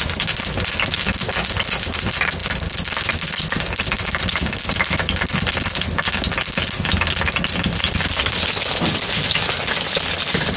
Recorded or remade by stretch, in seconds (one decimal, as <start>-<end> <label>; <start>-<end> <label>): 0.0-10.6 recorded